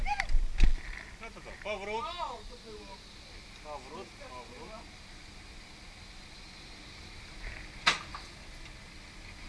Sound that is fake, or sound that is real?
real